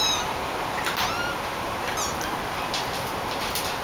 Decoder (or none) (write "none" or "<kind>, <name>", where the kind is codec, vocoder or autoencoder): none